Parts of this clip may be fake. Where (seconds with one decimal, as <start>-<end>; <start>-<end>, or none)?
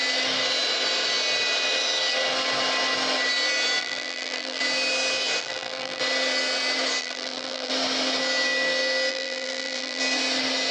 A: 3.8-4.6; 5.4-6.0; 7.0-7.7; 9.1-10.0